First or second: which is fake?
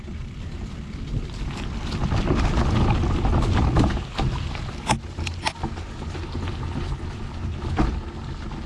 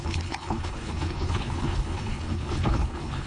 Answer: second